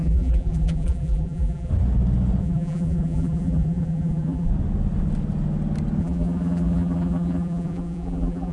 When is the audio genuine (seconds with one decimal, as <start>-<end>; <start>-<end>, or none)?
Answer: 1.7-2.4; 4.5-6.0